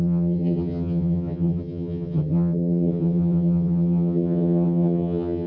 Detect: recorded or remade remade